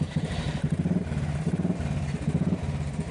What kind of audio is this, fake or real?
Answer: fake